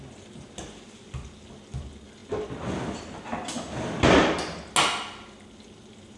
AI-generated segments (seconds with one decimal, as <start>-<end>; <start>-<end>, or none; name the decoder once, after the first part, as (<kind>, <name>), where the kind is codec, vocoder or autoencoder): none